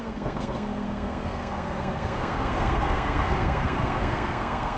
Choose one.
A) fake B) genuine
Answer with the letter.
A